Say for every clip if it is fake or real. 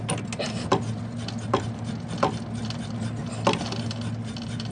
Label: real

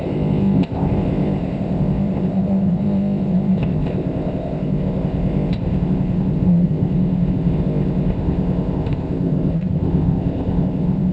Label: fake